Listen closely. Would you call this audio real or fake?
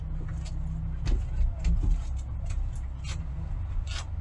real